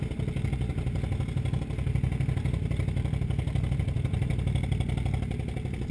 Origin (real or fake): real